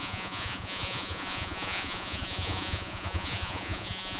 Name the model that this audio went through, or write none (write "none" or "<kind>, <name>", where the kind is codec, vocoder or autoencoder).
vocoder, Vocos